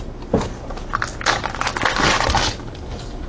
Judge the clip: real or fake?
real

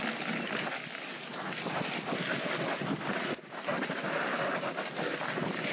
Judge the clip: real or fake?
real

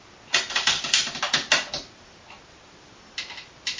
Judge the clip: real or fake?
real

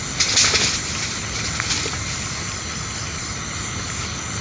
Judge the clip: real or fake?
real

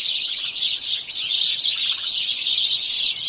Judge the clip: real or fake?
fake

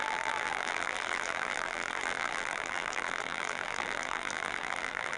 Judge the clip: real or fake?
fake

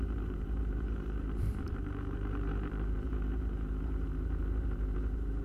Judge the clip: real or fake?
fake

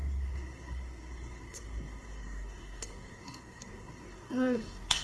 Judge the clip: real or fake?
fake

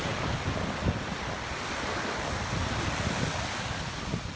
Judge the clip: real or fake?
real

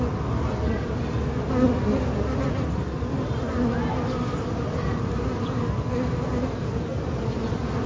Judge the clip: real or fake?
real